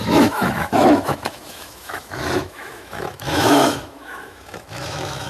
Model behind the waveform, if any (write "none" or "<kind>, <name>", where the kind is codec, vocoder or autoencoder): autoencoder, DAC-VAE